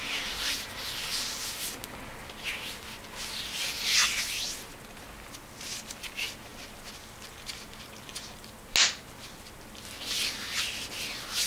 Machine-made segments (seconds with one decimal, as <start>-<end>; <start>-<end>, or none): none